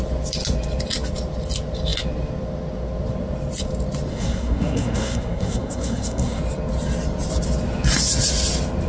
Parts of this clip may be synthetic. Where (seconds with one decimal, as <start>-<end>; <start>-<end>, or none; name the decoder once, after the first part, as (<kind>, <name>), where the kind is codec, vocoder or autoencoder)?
4.1-6.4 (codec, SNAC)